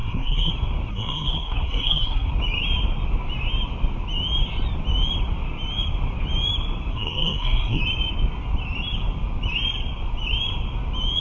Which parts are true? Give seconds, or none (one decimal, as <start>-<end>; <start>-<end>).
0.5-0.9; 2.3-6.9; 7.8-11.2